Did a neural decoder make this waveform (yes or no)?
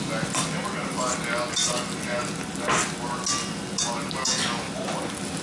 no